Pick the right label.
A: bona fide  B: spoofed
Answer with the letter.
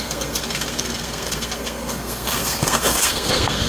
B